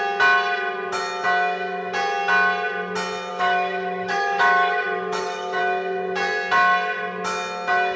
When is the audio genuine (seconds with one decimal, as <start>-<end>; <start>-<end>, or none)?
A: 0.0-3.3; 5.6-8.0

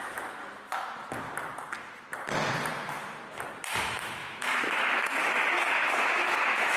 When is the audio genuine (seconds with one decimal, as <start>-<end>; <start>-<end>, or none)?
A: 0.4-3.8

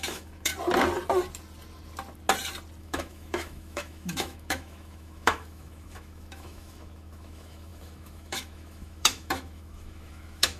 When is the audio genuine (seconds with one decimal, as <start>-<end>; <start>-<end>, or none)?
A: 0.5-2.8

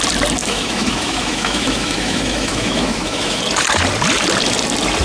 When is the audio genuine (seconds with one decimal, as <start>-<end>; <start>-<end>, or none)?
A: 0.0-0.4; 3.4-5.0

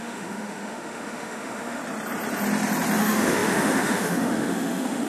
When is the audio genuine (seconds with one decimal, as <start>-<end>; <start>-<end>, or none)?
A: 1.8-3.0

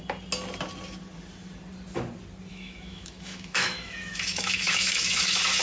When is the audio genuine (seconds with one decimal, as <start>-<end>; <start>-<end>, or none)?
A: 0.0-2.5

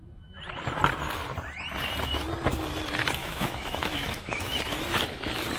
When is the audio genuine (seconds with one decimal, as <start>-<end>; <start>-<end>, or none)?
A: 0.0-3.2; 4.6-5.6